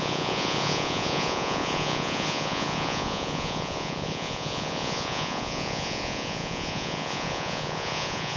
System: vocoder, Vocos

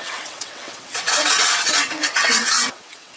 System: vocoder, WaveNeXt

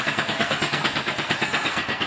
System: codec, SNAC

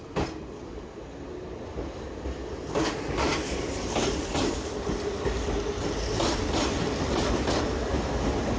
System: none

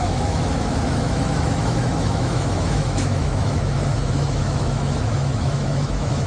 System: autoencoder, DAC-VAE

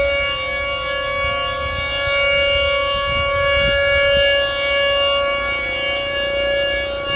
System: none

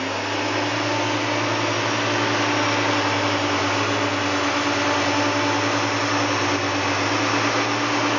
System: none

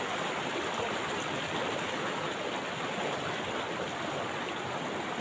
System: none